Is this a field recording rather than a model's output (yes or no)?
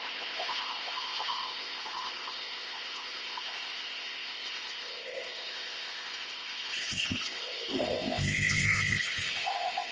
no